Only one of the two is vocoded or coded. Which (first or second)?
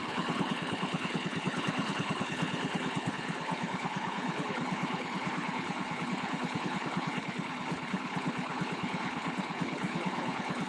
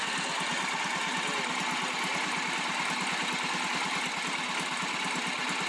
first